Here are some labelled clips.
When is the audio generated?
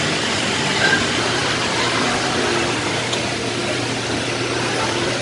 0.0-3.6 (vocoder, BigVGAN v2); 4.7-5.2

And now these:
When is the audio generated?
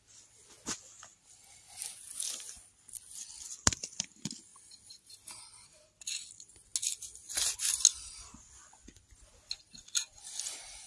none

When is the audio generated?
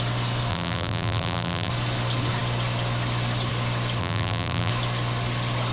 0.5-1.7 (vocoder, BigVGAN v2); 4.0-4.7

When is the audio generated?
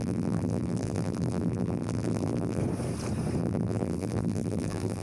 0.0-2.6 (vocoder, BigVGAN v2); 3.4-5.0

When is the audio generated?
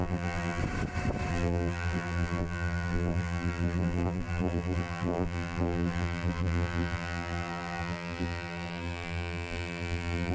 0.0-0.6 (vocoder, BigVGAN v2); 1.3-10.3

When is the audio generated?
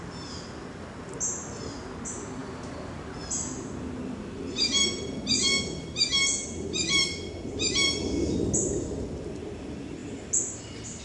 none